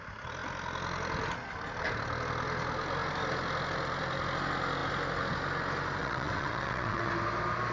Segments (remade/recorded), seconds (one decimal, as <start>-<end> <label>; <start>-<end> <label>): 0.0-6.0 recorded; 6.0-7.1 remade; 7.1-7.7 recorded